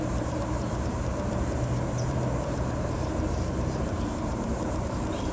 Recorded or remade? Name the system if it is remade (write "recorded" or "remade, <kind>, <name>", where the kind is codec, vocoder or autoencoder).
remade, vocoder, BigVGAN v2